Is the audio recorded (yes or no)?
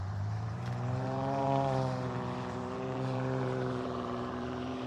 no